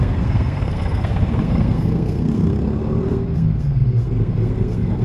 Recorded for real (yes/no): no